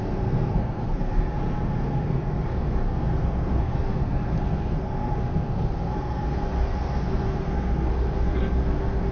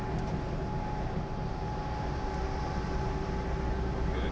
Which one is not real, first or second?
first